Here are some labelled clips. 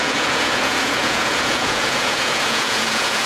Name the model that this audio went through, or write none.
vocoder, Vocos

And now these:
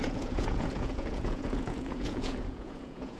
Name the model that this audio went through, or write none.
vocoder, Vocos